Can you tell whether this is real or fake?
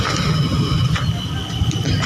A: real